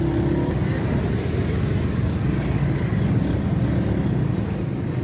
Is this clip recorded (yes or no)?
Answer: yes